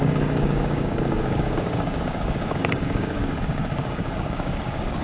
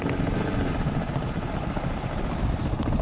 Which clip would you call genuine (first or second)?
second